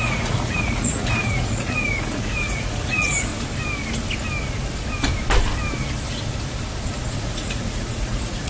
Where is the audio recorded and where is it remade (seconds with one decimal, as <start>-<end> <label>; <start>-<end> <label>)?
0.0-3.3 remade; 3.3-7.1 recorded; 7.1-8.5 remade